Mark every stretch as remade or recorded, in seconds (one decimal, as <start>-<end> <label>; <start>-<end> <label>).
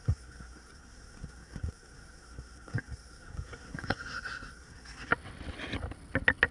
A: 0.0-5.1 remade; 5.1-6.5 recorded